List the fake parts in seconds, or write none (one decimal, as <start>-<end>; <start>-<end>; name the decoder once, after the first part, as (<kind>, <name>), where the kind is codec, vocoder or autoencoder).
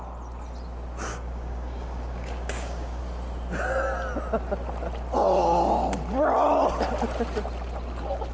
1.1-3.0 (codec, DAC)